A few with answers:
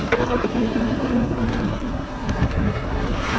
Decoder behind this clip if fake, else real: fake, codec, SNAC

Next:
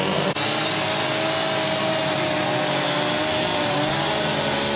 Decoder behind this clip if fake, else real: real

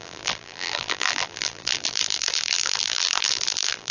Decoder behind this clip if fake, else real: fake, vocoder, BigVGAN v2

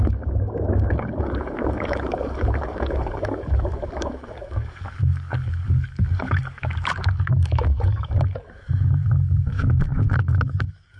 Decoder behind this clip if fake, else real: fake, codec, DAC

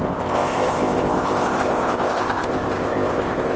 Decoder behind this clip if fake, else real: fake, codec, ZipCodec